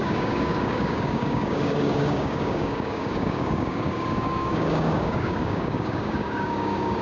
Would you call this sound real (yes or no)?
no